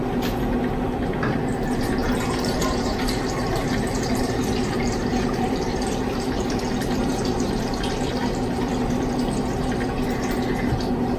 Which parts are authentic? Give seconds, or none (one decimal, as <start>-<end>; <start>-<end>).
0.0-2.0; 6.6-7.0; 7.6-11.2